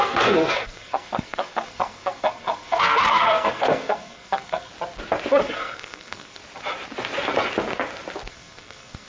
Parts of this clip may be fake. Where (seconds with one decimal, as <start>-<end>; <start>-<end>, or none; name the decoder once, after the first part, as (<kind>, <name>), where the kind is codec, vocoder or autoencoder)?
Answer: 0.0-4.7 (codec, SNAC); 5.4-6.4; 8.3-9.1